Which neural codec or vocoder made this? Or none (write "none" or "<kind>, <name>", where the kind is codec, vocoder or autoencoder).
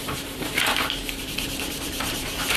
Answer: vocoder, BigVGAN v2